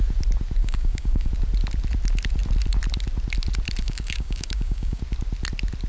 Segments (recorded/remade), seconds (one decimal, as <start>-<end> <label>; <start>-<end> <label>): 0.0-0.6 recorded; 0.6-1.3 remade; 1.3-3.8 recorded; 3.8-5.0 remade; 5.0-5.9 recorded